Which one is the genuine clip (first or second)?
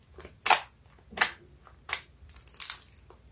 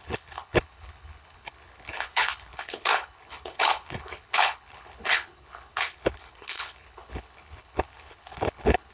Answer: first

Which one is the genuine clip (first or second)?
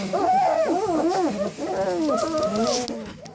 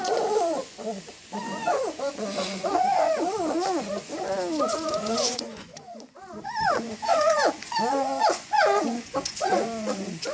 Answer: first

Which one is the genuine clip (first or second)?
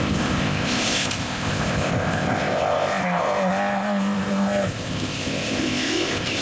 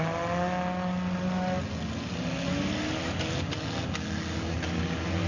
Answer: second